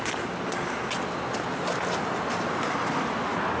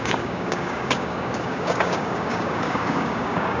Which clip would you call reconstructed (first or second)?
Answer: second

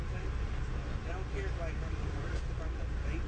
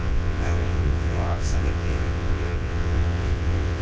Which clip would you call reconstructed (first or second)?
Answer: second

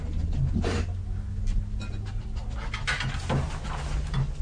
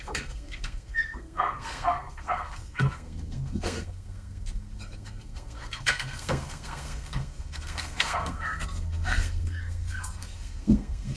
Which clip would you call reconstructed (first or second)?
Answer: second